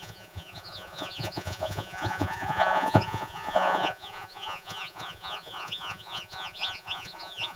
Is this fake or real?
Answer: fake